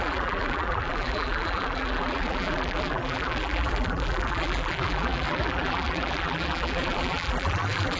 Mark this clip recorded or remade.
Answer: remade